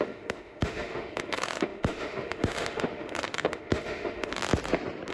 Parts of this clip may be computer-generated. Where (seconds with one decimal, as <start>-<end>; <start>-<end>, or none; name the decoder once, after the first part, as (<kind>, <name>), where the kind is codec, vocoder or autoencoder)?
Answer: 0.0-4.4 (autoencoder, DAC-VAE)